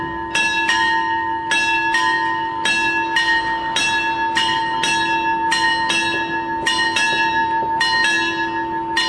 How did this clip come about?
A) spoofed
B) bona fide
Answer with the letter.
B